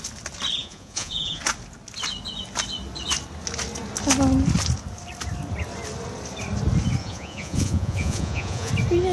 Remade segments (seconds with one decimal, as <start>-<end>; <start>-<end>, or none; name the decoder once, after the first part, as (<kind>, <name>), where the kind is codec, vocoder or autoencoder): 0.6-1.4 (vocoder, Vocos); 7.0-8.7

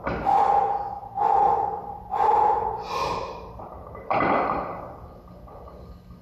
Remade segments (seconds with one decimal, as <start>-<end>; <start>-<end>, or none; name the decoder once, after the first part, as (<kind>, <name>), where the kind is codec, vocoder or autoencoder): 1.8-4.3 (vocoder, BigVGAN v2)

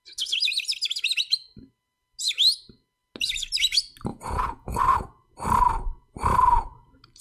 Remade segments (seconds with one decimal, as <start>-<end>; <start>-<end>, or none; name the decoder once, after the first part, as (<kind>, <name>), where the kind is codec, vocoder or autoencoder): 4.1-4.8 (vocoder, Vocos)

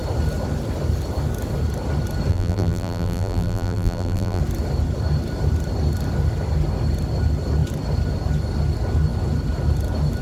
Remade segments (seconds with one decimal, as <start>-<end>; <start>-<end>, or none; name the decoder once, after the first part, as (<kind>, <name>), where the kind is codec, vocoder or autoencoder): 2.3-4.4 (vocoder, BigVGAN v2)

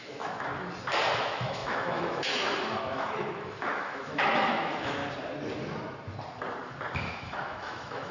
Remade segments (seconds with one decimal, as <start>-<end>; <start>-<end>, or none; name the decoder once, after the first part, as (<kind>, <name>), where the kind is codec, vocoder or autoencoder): 0.0-0.5 (autoencoder, DAC-VAE); 1.1-5.0; 7.1-8.1

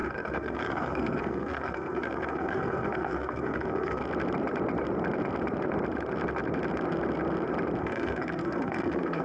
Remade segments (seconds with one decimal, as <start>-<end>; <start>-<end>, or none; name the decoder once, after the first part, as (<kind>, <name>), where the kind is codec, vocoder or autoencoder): 0.0-4.0 (codec, SNAC); 7.8-9.2

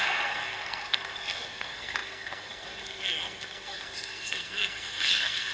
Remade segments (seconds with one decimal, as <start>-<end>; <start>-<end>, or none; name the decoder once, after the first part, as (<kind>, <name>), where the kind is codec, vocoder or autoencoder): 0.0-5.5 (codec, SNAC)